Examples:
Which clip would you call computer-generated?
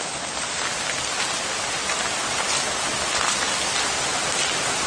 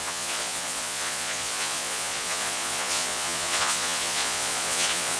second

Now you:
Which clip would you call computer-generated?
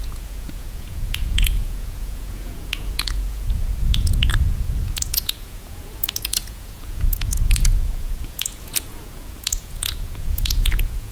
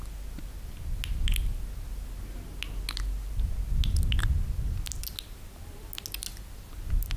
first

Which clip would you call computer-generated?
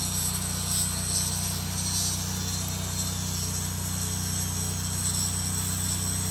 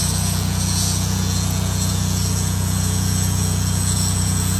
second